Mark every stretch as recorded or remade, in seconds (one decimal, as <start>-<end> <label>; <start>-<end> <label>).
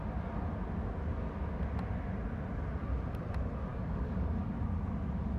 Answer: 0.0-3.7 recorded; 3.7-4.5 remade; 4.5-5.4 recorded